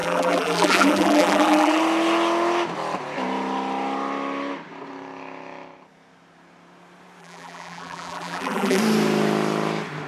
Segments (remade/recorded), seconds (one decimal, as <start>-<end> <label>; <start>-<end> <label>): 0.0-1.8 remade; 1.8-7.2 recorded; 7.2-8.8 remade; 8.8-10.1 recorded